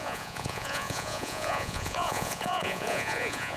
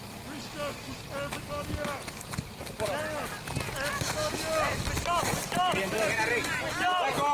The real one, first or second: second